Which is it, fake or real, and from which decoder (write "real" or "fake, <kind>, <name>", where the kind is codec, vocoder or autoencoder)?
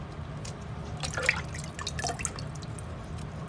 real